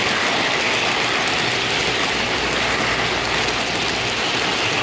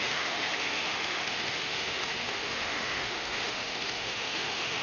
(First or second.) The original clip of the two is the first